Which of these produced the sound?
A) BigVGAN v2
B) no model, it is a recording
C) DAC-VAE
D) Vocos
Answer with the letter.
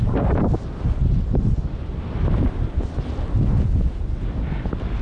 B